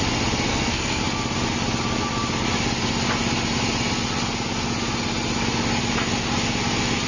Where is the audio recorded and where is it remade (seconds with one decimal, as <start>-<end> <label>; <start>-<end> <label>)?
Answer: 0.0-0.5 recorded; 0.5-1.0 remade; 1.0-7.1 recorded